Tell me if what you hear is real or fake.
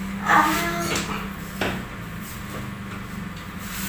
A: real